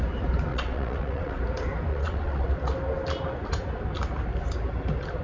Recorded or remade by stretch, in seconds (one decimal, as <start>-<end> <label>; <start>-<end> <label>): 0.0-0.5 recorded; 0.5-1.4 remade; 1.4-1.9 recorded; 1.9-2.5 remade; 2.5-5.2 recorded